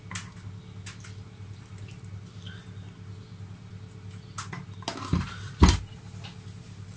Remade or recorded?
recorded